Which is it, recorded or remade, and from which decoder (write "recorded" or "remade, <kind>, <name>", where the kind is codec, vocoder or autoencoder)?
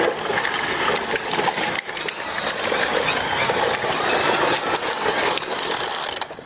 recorded